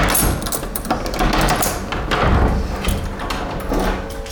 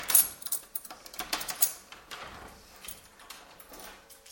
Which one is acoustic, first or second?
first